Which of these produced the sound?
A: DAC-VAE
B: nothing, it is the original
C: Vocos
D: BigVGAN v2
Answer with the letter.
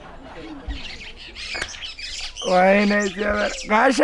B